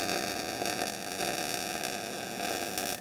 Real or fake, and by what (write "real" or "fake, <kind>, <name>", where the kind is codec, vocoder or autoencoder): real